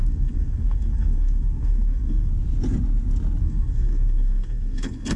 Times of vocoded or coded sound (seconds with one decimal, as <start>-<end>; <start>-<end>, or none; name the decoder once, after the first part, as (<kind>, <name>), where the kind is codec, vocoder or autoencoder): 0.0-2.3 (codec, SNAC); 3.4-5.2